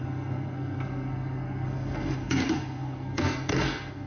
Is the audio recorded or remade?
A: remade